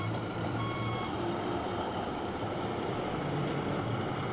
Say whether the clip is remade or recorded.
remade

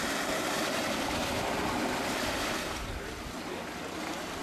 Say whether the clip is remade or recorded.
recorded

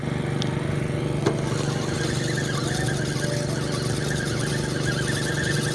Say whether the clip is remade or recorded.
recorded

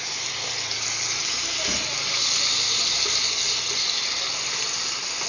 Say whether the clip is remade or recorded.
recorded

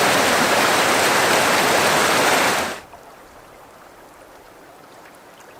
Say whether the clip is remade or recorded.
remade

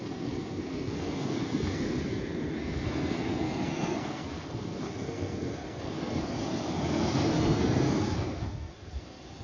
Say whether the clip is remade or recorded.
remade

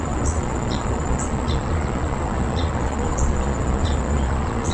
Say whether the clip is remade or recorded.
remade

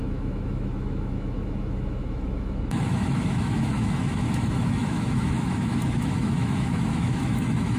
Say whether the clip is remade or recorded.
remade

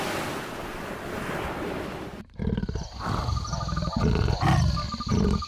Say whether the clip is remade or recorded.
recorded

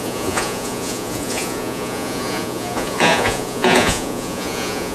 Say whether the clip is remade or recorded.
remade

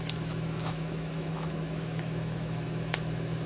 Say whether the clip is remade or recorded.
remade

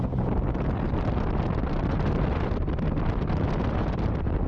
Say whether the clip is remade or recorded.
recorded